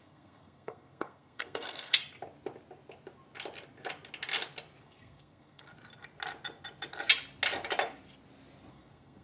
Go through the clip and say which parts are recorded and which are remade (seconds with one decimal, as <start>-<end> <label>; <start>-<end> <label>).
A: 0.0-2.0 remade; 2.0-4.8 recorded; 4.8-5.7 remade; 5.7-8.7 recorded; 8.7-9.2 remade

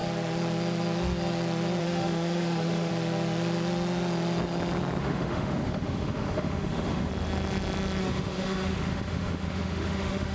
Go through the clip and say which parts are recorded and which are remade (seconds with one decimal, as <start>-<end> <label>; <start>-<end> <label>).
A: 0.0-1.8 recorded; 1.8-2.9 remade; 2.9-5.0 recorded; 5.0-7.1 remade; 7.1-8.0 recorded; 8.0-10.3 remade

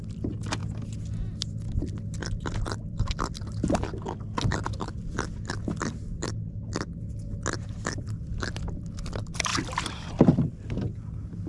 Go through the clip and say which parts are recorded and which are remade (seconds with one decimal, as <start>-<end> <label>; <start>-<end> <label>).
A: 0.0-11.5 recorded

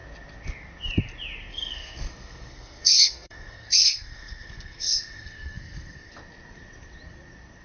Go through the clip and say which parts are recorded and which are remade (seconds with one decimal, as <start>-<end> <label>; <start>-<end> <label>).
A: 0.0-1.5 recorded; 1.5-6.1 remade; 6.1-7.6 recorded